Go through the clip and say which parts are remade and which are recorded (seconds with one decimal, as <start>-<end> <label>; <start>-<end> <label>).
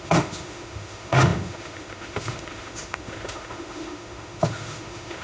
0.0-5.2 remade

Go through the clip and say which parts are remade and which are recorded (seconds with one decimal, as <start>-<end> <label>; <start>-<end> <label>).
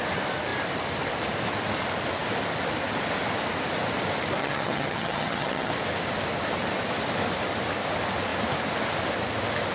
0.0-4.4 recorded; 4.4-5.7 remade; 5.7-9.7 recorded